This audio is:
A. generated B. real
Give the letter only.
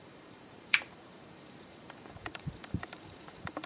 A